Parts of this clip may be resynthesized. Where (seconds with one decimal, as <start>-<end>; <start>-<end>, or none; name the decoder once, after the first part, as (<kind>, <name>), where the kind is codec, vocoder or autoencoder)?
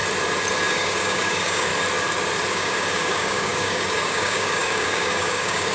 0.7-1.7 (codec, DAC); 2.5-5.7